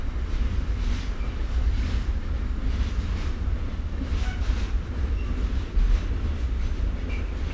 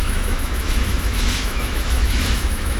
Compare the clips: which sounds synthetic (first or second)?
second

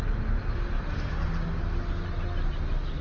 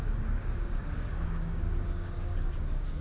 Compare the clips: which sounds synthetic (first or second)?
second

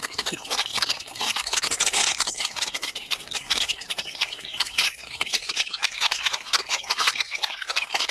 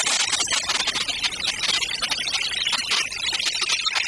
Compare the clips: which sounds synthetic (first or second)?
first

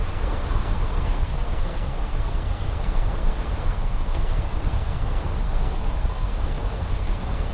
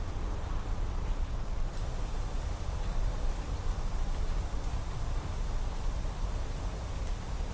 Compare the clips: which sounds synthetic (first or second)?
first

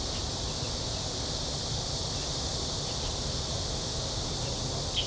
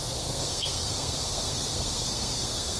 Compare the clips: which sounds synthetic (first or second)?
second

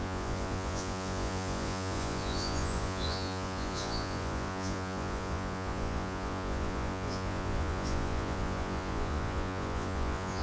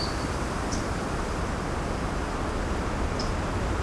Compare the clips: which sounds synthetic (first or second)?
first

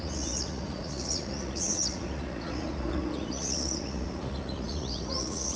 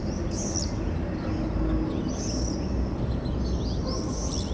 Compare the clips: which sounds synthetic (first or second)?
first